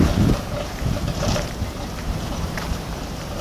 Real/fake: fake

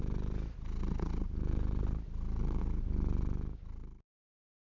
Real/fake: real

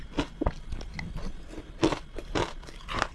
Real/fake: real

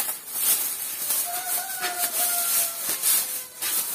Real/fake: real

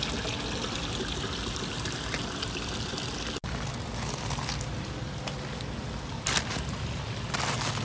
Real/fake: real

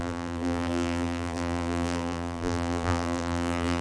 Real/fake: fake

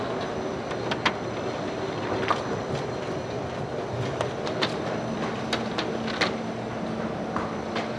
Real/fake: real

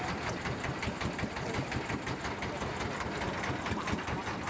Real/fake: real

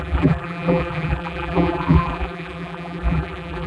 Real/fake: fake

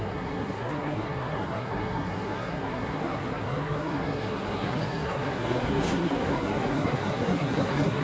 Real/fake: fake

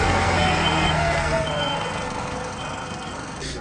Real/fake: fake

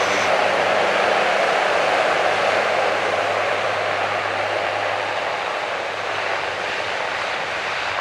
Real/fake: fake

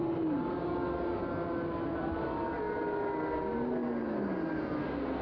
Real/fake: real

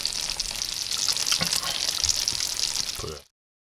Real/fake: real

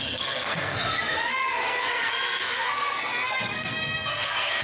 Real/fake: fake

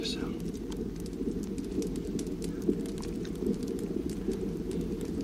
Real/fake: real